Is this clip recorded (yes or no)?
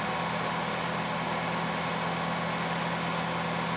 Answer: yes